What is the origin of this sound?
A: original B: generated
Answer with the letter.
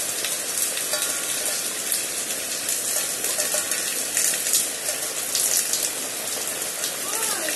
A